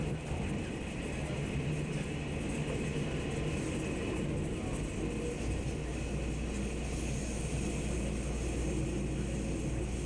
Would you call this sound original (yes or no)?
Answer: yes